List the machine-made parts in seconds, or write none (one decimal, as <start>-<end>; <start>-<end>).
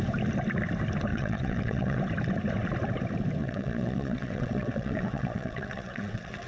1.1-2.0; 3.4-6.5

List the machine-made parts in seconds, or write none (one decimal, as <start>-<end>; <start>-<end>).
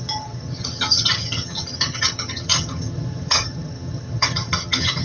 0.0-5.0